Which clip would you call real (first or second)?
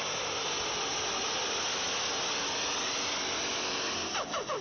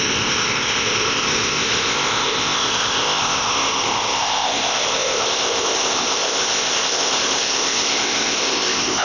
first